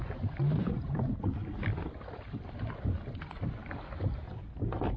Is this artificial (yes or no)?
no